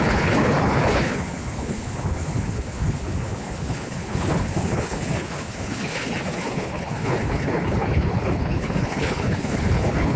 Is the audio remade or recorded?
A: remade